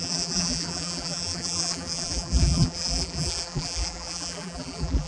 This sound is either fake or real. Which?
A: fake